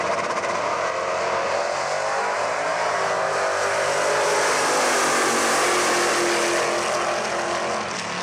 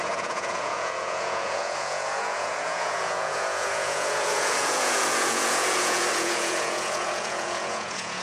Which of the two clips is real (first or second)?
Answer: first